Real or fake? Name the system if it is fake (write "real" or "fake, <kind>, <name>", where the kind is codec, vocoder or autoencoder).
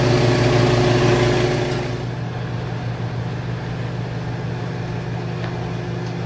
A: real